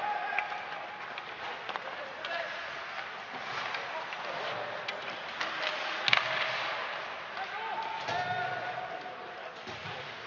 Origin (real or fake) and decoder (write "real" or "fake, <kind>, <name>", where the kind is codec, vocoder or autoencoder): real